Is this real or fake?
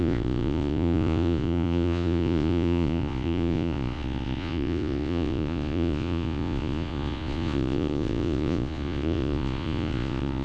fake